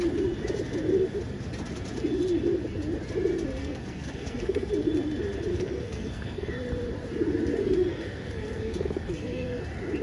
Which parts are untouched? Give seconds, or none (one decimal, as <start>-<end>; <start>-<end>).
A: 0.0-3.6; 4.7-5.5; 6.5-7.6; 9.6-10.0